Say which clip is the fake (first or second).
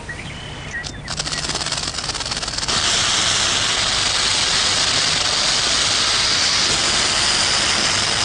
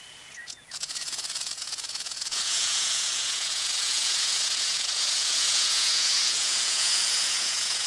second